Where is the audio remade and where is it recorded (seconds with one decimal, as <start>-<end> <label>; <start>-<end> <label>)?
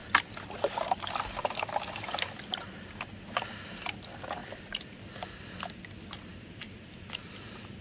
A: 0.0-4.4 recorded; 4.4-5.0 remade; 5.0-6.3 recorded; 6.3-7.8 remade